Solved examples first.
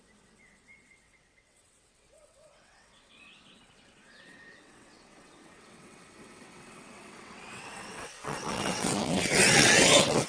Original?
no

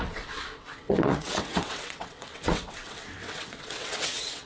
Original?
no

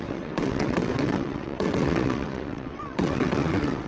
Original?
no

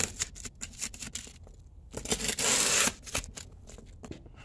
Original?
yes